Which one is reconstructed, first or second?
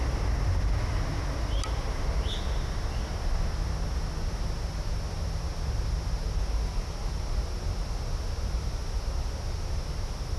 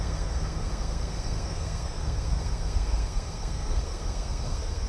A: second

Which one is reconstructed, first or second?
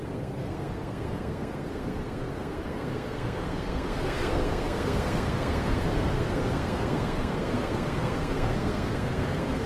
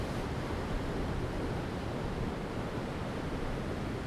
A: first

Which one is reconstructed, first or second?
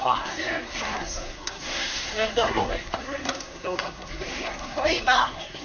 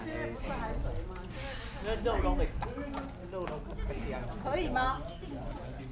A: first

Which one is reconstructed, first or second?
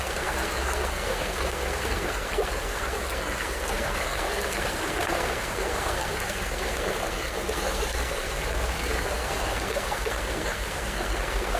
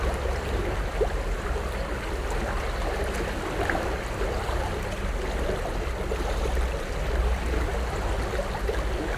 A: first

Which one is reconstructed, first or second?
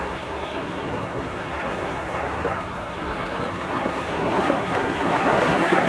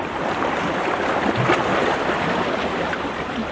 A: first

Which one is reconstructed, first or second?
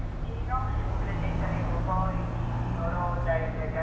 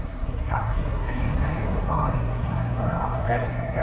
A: second